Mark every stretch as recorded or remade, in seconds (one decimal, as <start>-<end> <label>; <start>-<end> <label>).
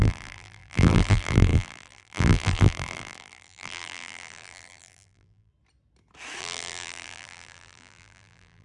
0.0-5.5 remade; 5.5-6.4 recorded; 6.4-8.6 remade